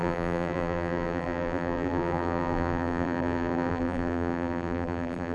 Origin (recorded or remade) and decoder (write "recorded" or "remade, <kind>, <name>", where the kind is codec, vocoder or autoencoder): remade, vocoder, BigVGAN v2